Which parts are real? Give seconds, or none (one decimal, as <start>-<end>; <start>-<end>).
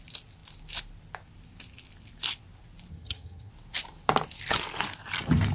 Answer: 0.0-2.9; 3.5-5.5